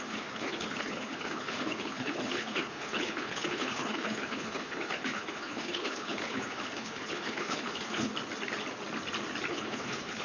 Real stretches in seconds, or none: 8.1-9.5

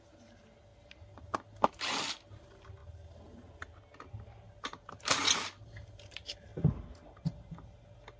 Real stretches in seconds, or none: 0.0-8.2

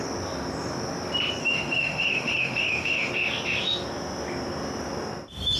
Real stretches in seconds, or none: 0.0-1.4; 3.1-5.6

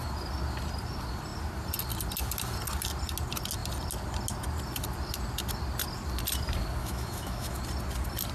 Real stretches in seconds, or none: 0.0-6.8; 7.6-8.3

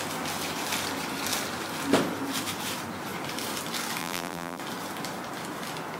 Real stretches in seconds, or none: 0.0-4.0; 4.6-6.0